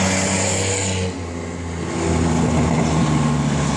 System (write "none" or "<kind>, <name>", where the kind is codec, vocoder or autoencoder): none